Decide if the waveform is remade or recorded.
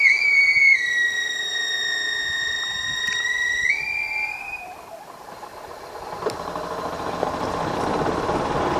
recorded